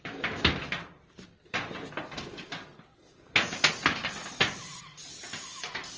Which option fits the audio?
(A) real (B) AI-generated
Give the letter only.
A